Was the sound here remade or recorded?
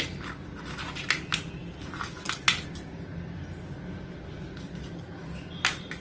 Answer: recorded